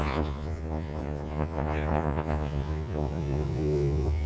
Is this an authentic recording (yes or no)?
no